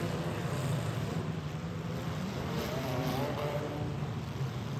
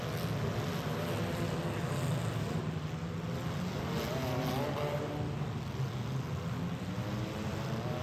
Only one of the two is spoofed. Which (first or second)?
first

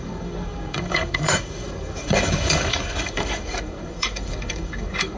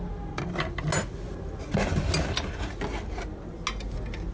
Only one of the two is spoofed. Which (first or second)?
first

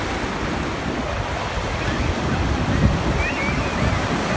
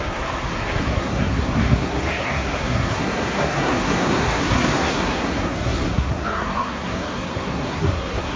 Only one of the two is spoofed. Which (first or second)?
second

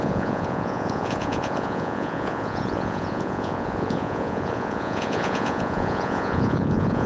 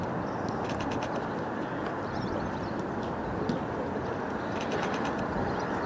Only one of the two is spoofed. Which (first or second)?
first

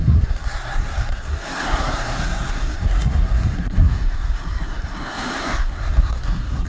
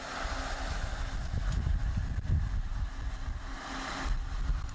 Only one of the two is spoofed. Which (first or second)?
first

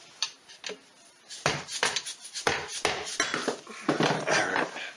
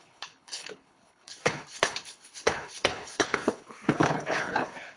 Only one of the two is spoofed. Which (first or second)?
second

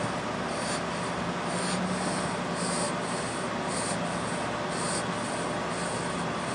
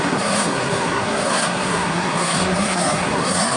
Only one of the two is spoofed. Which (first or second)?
second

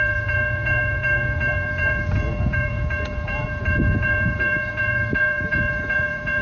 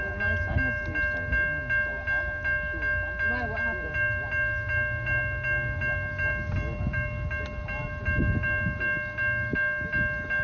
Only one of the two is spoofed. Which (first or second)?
first